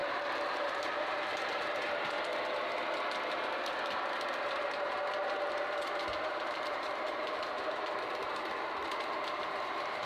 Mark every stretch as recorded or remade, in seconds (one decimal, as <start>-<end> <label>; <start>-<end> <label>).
0.0-2.3 remade; 2.3-6.1 recorded; 6.1-10.1 remade

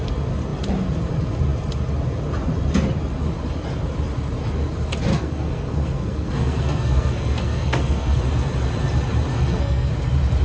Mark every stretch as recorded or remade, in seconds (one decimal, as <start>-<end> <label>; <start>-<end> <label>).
0.0-5.1 recorded; 5.1-8.2 remade; 8.2-9.3 recorded; 9.3-9.9 remade; 9.9-10.4 recorded

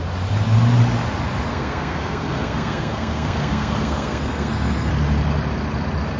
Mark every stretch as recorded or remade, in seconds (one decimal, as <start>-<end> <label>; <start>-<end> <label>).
0.0-1.5 recorded; 1.5-4.9 remade; 4.9-6.2 recorded

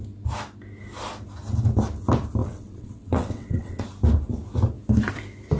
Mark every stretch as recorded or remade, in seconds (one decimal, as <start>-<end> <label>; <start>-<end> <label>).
0.0-2.4 recorded; 2.4-3.9 remade; 3.9-5.6 recorded

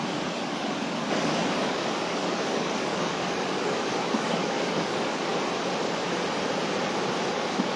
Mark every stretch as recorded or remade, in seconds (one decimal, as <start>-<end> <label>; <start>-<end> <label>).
0.0-5.3 remade; 5.3-7.3 recorded; 7.3-7.8 remade

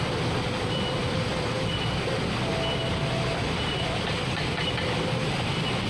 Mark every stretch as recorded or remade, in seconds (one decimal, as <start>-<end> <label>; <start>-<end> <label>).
0.0-5.9 recorded

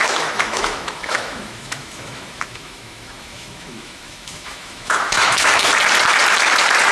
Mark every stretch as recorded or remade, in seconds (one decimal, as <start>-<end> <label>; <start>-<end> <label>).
0.0-5.7 remade; 5.7-6.9 recorded

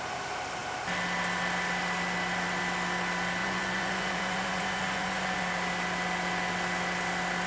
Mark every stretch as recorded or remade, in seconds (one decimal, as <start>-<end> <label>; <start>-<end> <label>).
0.0-3.4 recorded; 3.4-5.4 remade; 5.4-7.5 recorded